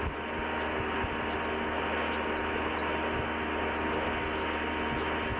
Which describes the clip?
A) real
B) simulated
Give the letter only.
A